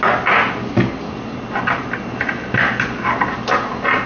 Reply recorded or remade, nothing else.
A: recorded